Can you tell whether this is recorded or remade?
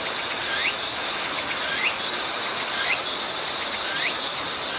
recorded